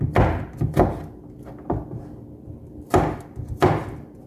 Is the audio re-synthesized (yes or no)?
no